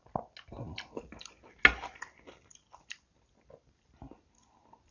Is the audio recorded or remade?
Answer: recorded